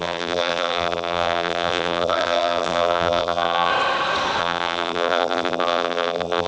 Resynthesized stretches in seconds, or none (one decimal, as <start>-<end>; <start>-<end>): 0.0-3.7; 4.4-6.5